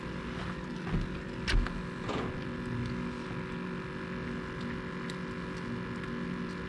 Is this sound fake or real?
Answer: real